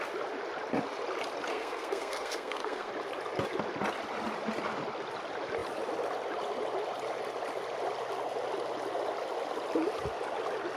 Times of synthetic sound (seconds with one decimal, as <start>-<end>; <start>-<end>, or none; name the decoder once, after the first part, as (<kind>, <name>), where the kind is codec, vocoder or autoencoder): 1.5-2.9 (codec, SNAC)